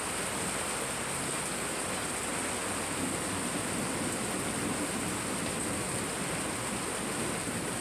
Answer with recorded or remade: recorded